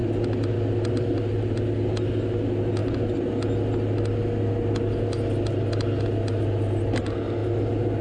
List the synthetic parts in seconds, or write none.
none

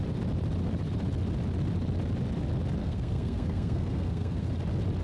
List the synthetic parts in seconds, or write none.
2.8-4.5 (codec, SNAC)